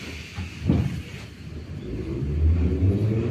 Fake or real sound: real